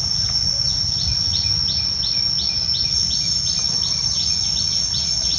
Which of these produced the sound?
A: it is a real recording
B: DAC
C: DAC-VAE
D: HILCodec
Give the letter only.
A